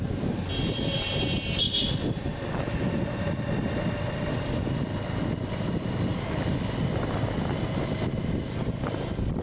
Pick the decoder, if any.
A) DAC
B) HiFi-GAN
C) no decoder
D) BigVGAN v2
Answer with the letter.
C